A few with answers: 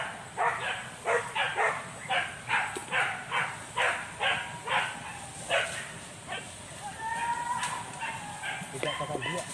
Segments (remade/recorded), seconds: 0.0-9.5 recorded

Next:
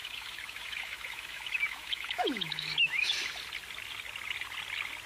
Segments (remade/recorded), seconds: 0.0-3.1 remade; 3.1-5.1 recorded

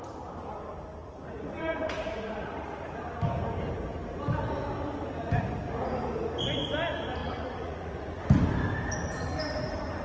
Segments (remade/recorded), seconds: 0.0-1.0 recorded; 1.0-2.8 remade; 2.8-7.2 recorded; 7.2-8.2 remade; 8.2-10.0 recorded

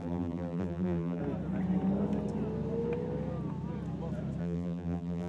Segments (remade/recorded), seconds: 0.0-1.2 remade; 1.2-4.4 recorded; 4.4-5.3 remade